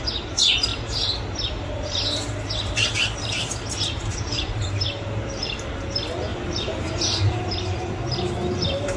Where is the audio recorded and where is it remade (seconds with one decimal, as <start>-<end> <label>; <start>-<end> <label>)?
0.0-0.7 recorded; 0.7-5.7 remade; 5.7-6.3 recorded; 6.3-7.5 remade; 7.5-9.0 recorded